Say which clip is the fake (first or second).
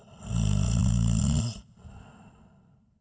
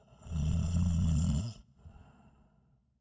second